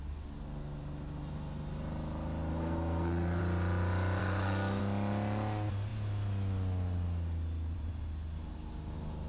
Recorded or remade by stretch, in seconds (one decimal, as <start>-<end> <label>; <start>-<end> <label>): 0.0-2.5 recorded; 2.5-3.4 remade; 3.4-4.2 recorded; 4.2-4.8 remade; 4.8-9.3 recorded